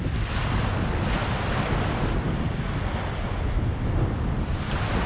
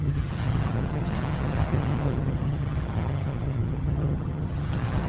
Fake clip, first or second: second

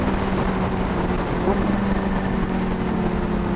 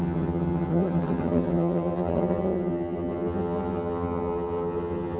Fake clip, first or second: second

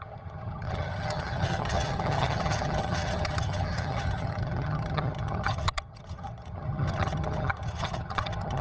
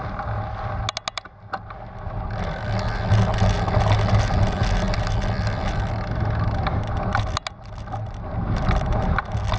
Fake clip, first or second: first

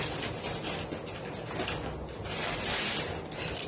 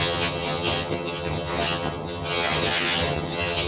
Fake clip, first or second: second